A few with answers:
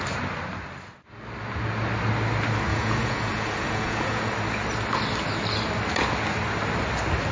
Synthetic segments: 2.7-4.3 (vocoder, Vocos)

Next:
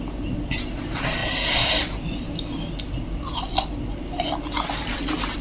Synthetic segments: none

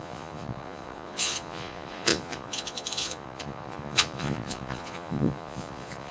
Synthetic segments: 0.0-6.1 (vocoder, Vocos)

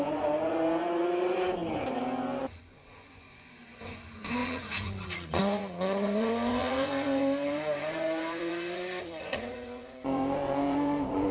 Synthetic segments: 0.0-1.6 (vocoder, Vocos); 2.4-11.3

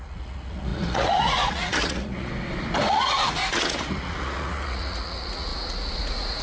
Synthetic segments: 0.0-2.3 (vocoder, Vocos); 2.9-6.4